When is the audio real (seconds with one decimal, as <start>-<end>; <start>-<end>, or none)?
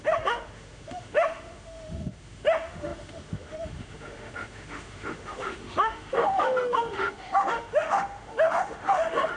none